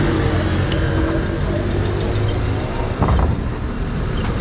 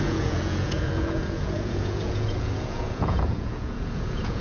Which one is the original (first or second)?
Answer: first